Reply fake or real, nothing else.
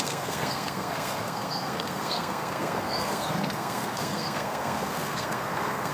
fake